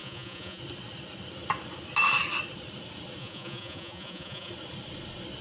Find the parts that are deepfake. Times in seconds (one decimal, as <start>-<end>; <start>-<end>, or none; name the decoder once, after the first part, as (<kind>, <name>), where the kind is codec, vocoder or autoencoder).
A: 0.0-0.6 (vocoder, Vocos); 3.2-4.5